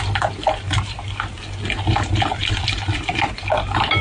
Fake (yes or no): no